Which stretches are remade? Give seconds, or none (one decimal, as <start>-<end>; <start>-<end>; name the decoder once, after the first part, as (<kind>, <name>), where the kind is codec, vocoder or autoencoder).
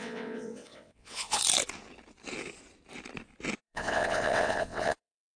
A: 0.0-1.4 (vocoder, WaveNeXt); 3.6-5.4